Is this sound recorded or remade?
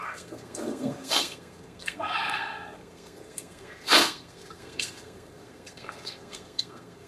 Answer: remade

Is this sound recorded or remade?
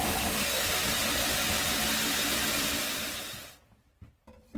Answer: recorded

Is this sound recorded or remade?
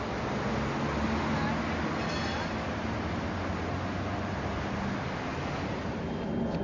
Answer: recorded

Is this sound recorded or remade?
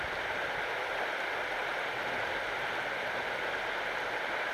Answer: recorded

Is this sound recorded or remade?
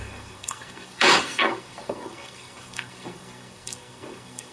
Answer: remade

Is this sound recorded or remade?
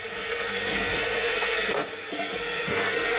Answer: remade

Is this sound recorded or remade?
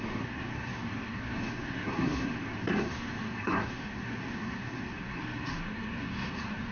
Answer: remade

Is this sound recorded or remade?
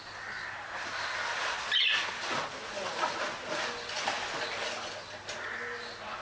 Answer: recorded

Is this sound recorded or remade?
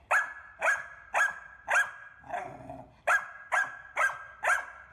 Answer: recorded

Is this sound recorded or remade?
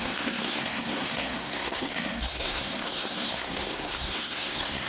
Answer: remade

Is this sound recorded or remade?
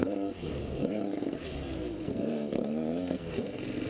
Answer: remade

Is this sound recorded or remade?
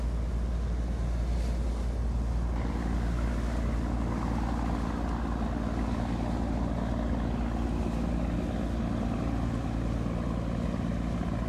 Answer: recorded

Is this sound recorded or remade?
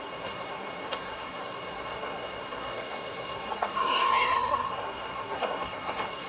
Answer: remade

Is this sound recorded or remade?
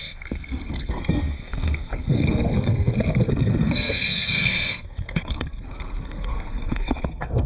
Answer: remade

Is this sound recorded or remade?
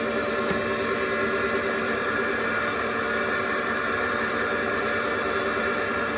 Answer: recorded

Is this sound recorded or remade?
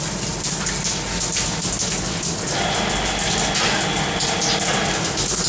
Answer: recorded